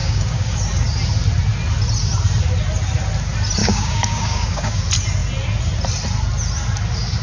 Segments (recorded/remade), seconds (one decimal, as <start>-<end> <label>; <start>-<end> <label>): 0.0-0.6 remade; 0.6-3.6 recorded; 3.6-4.8 remade; 4.8-7.2 recorded